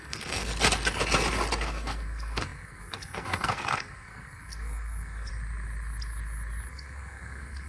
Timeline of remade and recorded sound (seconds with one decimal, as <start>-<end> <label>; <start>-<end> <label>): 0.0-0.5 remade; 0.5-1.6 recorded; 1.6-5.3 remade; 5.3-6.7 recorded; 6.7-7.7 remade